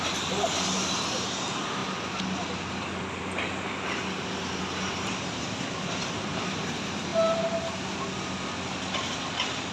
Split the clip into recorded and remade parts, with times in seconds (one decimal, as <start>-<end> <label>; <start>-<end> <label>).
0.0-9.7 recorded